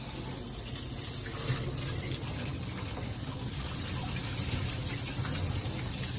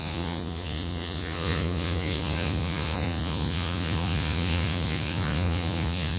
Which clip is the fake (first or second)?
second